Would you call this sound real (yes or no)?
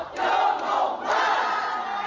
yes